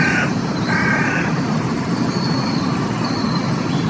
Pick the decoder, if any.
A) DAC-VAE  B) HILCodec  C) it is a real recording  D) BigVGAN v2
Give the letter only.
C